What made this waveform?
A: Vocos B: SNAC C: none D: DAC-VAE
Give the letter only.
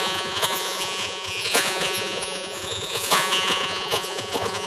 A